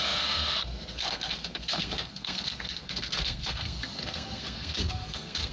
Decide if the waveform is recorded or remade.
remade